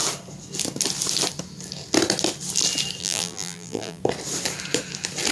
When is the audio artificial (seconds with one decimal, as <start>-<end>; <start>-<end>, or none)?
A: 3.0-4.0